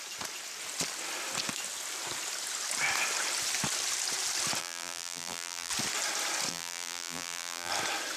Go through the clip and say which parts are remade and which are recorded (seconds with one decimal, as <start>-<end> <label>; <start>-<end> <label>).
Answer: 0.0-4.6 recorded; 4.6-5.7 remade; 5.7-6.5 recorded; 6.5-7.7 remade; 7.7-8.2 recorded